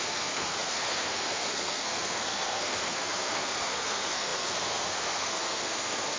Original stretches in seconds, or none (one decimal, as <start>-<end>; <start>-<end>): none